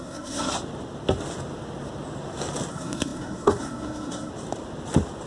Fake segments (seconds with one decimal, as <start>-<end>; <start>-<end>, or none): 0.0-0.5; 2.7-4.3